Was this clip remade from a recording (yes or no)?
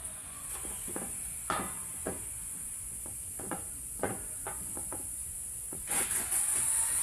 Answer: yes